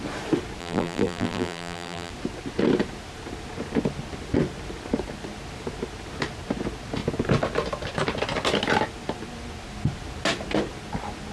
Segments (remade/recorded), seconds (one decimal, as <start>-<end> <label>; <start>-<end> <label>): 0.0-0.6 recorded; 0.6-2.1 remade; 2.1-11.3 recorded